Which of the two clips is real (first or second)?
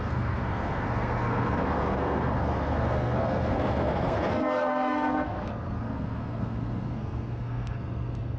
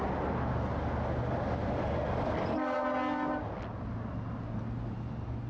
second